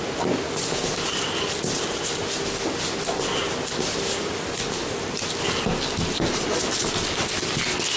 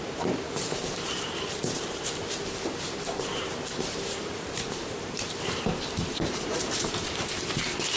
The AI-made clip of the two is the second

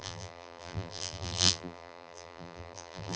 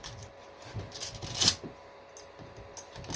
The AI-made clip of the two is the first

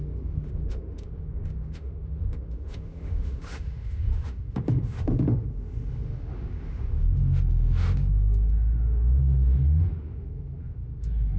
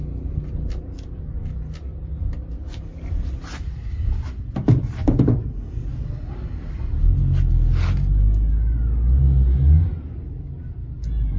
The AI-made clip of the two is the first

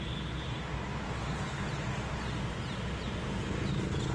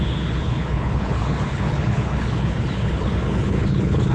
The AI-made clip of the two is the second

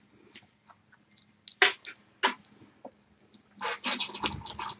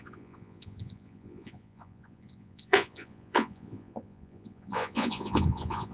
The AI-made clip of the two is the second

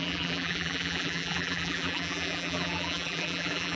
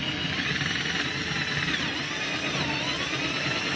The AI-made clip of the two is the first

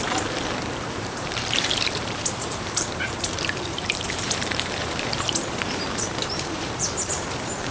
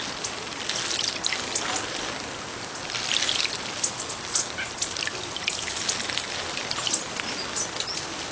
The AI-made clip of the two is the first